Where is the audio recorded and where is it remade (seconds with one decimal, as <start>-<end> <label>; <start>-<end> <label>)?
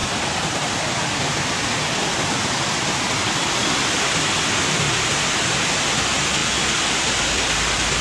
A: 0.0-3.0 remade; 3.0-3.6 recorded; 3.6-4.1 remade; 4.1-6.4 recorded; 6.4-7.3 remade; 7.3-8.0 recorded